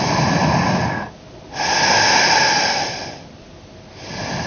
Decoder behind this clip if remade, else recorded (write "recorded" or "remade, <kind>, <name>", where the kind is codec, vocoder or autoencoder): recorded